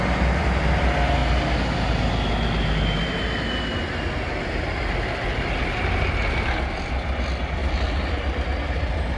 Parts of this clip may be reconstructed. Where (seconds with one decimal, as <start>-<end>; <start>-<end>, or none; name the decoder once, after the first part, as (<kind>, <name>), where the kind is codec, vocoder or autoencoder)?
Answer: 7.6-8.1 (vocoder, BigVGAN v2)